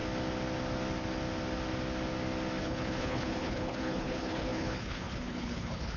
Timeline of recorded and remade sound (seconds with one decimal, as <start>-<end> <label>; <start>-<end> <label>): 0.0-2.6 recorded; 2.6-6.0 remade